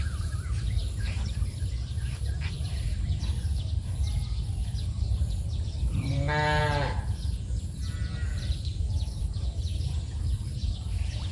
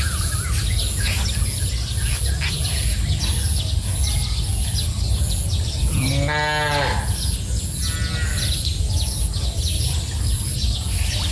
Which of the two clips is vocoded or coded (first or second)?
first